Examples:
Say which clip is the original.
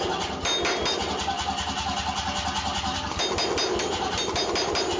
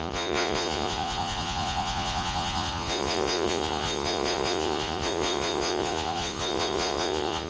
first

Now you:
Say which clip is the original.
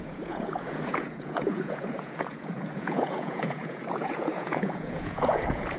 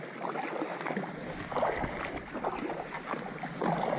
second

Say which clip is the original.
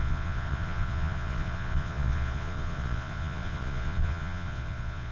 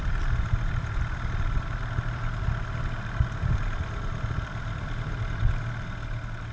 second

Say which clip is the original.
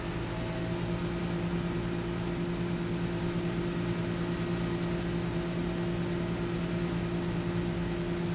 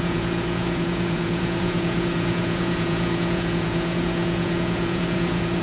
first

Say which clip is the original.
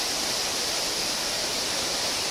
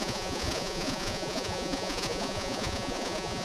first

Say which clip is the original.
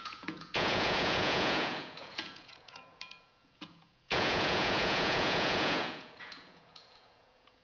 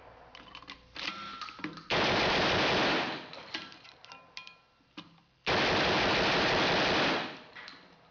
second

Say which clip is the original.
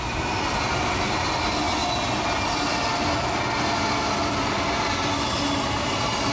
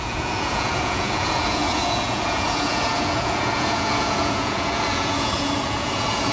first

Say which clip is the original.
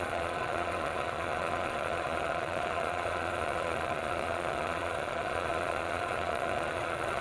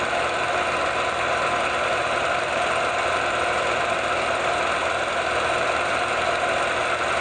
second